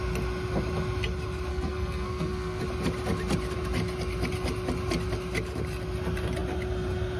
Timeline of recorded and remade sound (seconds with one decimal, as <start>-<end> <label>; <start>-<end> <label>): 0.0-1.5 recorded; 1.5-2.6 remade; 2.6-7.2 recorded